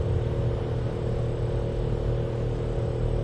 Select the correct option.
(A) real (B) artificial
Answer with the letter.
A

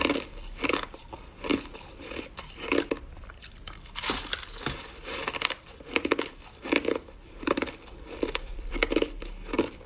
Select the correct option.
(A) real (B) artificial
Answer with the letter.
B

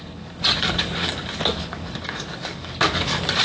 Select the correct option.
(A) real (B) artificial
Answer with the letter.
B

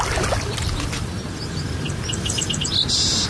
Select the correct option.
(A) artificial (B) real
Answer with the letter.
B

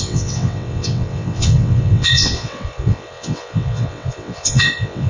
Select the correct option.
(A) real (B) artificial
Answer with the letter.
B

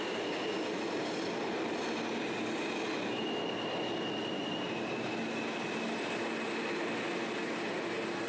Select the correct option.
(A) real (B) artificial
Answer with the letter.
A